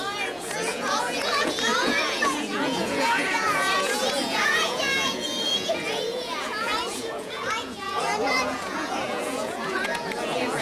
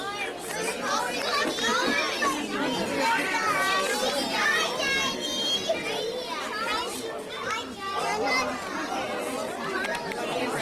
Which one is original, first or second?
second